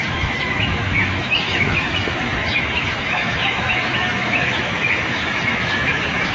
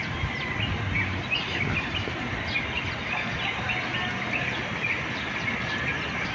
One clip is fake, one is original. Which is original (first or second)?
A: second